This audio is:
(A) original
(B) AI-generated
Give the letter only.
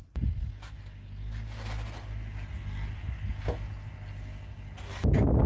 A